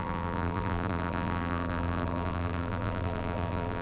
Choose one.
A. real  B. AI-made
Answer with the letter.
B